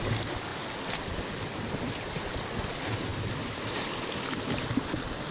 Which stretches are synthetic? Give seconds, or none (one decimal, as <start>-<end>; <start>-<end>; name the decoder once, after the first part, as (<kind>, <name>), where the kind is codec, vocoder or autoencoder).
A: 3.1-3.7 (vocoder, BigVGAN v2)